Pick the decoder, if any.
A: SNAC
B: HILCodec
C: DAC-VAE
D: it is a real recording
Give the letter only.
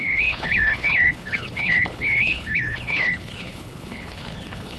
B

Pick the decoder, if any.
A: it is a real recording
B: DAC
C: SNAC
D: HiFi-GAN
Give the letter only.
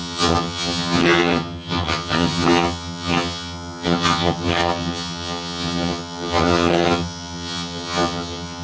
D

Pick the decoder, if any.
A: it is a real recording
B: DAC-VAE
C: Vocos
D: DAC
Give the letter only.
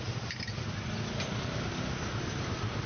A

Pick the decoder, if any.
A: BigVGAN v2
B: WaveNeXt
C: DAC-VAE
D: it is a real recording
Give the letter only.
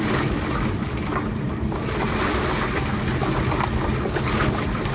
D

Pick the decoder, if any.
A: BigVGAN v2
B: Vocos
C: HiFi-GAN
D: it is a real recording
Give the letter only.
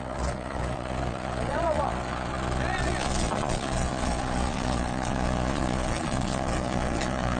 B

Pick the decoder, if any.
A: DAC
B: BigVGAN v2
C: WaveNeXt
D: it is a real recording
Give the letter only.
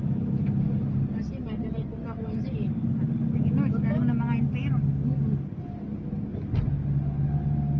D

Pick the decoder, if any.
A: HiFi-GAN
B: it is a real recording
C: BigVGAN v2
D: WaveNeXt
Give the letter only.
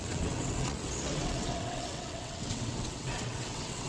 D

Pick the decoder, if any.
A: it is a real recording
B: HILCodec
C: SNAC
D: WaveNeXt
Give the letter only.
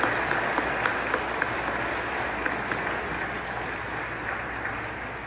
A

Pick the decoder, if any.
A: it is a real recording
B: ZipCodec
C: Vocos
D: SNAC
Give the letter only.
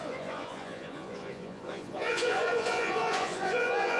C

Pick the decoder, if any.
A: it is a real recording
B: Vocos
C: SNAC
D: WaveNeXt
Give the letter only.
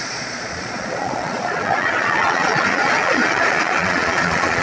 B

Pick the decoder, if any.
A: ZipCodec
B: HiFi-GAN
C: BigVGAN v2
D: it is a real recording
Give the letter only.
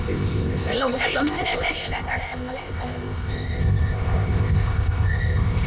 A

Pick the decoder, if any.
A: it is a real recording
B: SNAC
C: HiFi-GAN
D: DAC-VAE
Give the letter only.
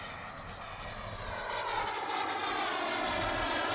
A